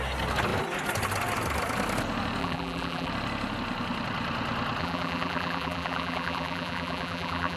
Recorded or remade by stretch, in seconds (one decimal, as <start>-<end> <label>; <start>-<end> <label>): 0.0-2.4 recorded; 2.4-3.1 remade; 3.1-4.8 recorded; 4.8-7.6 remade